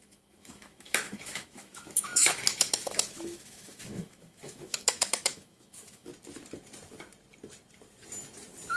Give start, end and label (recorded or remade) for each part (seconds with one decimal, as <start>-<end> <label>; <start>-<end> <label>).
0.0-6.1 remade; 6.1-8.8 recorded